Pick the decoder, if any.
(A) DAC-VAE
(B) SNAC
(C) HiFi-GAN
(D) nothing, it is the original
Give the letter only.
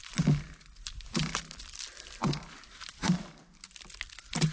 D